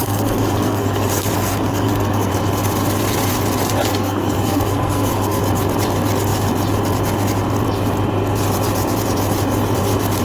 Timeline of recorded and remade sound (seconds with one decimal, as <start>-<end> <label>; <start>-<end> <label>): 0.0-2.3 remade; 2.3-3.9 recorded; 3.9-5.4 remade; 5.4-10.2 recorded